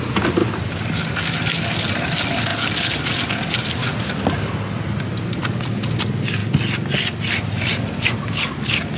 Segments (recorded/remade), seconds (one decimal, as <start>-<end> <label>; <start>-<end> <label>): 0.0-9.0 recorded